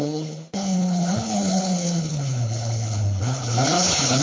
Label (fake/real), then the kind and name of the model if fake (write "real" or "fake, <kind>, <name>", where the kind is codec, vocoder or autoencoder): fake, codec, HILCodec